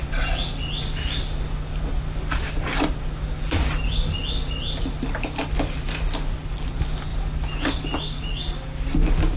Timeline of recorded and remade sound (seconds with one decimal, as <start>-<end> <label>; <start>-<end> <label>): 0.0-9.4 recorded